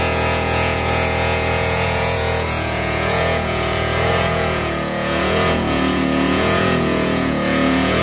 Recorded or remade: remade